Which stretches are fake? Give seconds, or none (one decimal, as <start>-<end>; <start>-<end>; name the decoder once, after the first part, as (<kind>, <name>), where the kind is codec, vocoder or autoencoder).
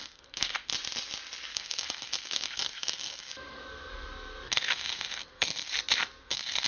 0.0-0.7 (codec, SNAC); 1.5-5.7; 6.2-6.7